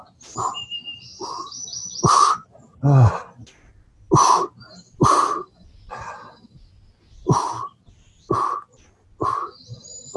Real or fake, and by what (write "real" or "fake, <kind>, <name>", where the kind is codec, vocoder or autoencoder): real